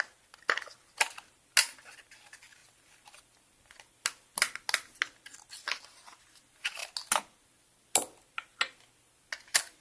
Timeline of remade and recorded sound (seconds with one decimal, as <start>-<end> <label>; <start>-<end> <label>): 0.0-9.8 recorded